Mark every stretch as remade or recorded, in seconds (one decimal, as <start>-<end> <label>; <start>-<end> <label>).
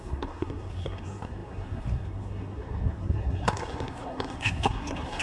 0.0-5.2 remade